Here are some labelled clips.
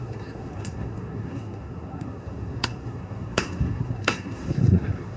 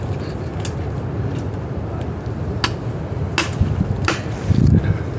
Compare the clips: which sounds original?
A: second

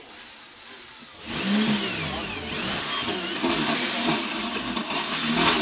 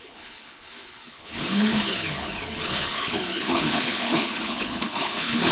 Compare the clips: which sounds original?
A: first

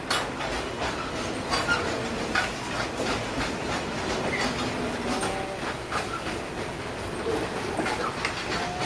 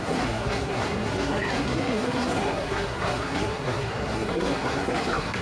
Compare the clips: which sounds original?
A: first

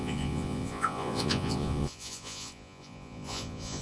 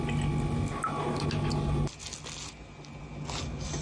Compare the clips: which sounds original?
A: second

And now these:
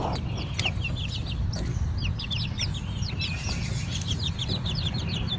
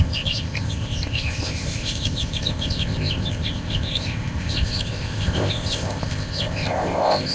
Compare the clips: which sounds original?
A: first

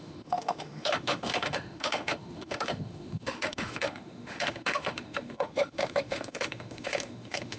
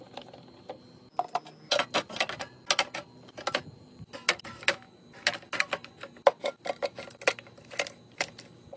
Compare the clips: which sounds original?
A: second